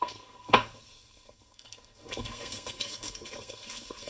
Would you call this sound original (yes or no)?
no